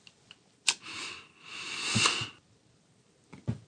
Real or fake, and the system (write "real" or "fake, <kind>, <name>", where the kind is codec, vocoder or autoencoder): real